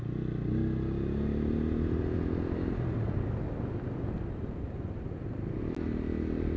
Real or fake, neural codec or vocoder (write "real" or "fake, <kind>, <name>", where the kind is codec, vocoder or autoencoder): real